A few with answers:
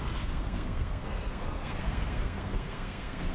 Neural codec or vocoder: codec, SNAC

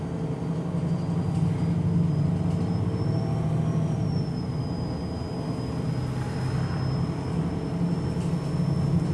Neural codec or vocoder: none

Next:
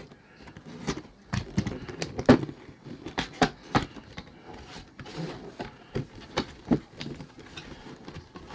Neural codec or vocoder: none